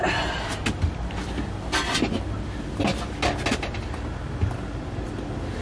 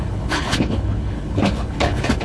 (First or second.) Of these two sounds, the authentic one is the first